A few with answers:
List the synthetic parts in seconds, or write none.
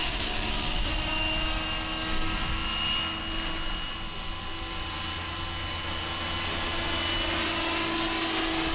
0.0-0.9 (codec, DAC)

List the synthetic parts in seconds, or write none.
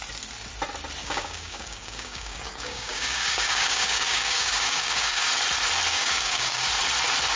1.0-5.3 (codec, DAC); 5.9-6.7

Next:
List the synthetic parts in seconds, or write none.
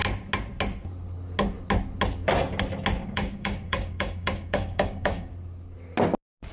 3.0-5.3 (codec, DAC)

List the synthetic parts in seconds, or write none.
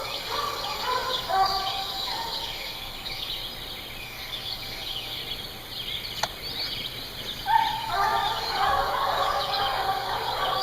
0.0-3.4 (codec, DAC); 4.0-5.2; 7.7-10.6